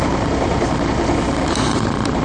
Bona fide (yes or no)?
yes